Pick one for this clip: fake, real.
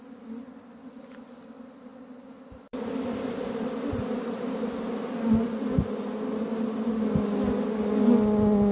real